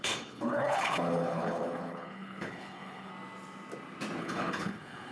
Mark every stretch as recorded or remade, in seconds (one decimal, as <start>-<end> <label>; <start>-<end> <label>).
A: 0.0-3.1 remade; 3.1-4.2 recorded; 4.2-5.1 remade